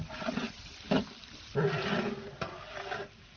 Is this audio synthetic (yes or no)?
no